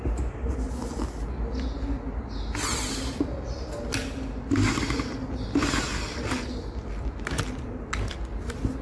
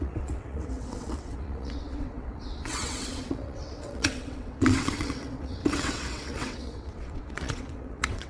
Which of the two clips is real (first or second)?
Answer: first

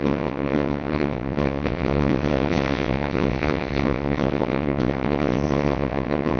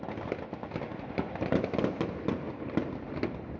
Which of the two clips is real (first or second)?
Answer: second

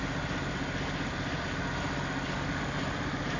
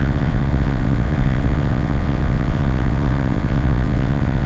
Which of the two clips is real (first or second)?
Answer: first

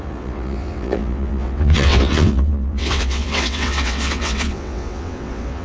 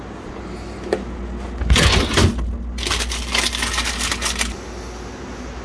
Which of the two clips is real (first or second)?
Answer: second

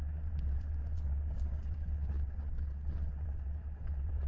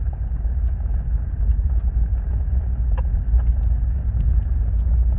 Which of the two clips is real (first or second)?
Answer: second